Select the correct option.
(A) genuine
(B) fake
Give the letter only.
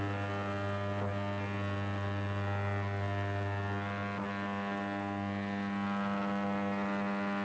A